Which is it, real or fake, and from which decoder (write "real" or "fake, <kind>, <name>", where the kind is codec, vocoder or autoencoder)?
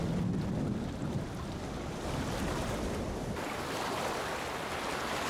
real